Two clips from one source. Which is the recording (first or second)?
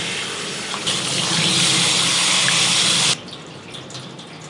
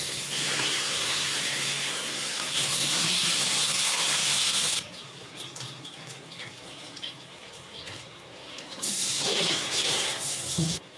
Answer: first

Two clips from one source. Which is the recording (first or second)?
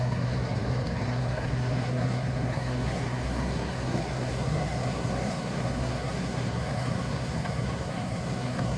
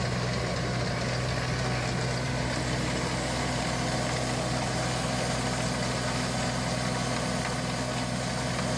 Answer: second